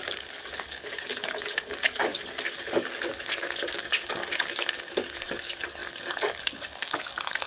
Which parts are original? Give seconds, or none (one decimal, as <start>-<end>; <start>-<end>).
none